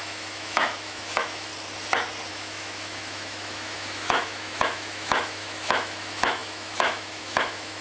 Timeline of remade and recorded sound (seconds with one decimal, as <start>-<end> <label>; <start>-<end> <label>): 0.0-1.5 remade; 1.5-2.3 recorded; 2.3-7.8 remade